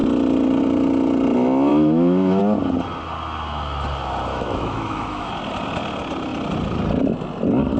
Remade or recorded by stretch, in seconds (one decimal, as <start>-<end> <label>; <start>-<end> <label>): 0.0-1.7 recorded; 1.7-2.4 remade; 2.4-4.3 recorded; 4.3-5.3 remade; 5.3-7.8 recorded